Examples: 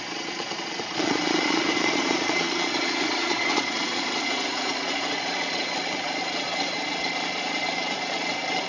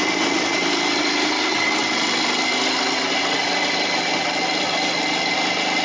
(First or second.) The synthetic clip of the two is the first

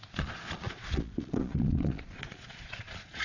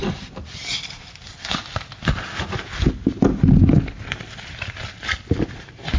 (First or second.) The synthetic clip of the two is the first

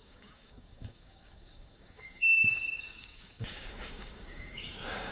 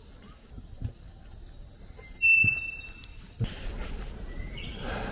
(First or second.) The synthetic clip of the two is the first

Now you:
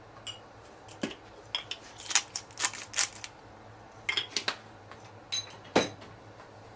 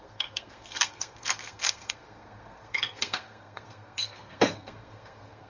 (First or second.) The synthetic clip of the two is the second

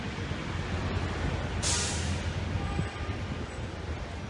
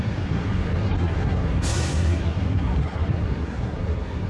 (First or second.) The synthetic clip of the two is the second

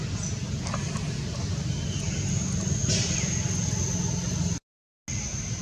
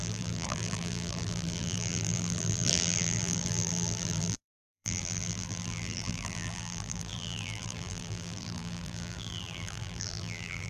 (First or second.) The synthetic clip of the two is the second